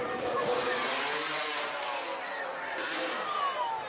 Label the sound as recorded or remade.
recorded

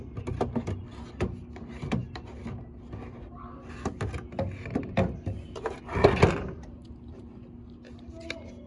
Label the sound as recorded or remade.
recorded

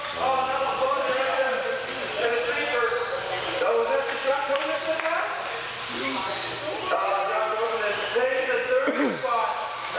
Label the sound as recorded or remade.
remade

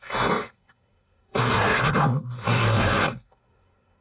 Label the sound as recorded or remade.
remade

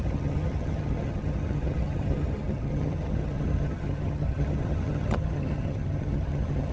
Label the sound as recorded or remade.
remade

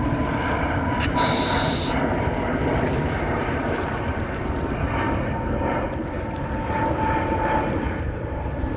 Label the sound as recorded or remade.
remade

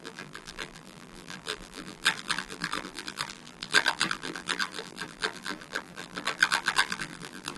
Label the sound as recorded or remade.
remade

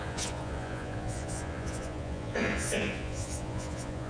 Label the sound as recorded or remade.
remade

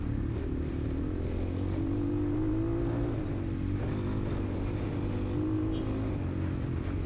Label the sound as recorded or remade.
recorded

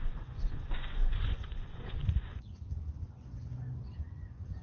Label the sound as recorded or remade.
remade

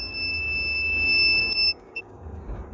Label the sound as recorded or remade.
remade